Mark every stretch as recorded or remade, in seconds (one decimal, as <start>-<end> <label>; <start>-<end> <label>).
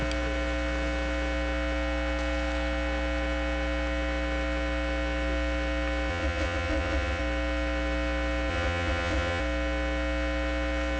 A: 0.0-6.1 recorded; 6.1-7.2 remade; 7.2-8.5 recorded; 8.5-9.4 remade; 9.4-11.0 recorded